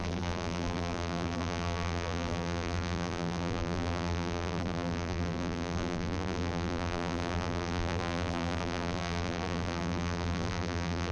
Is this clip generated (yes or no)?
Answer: yes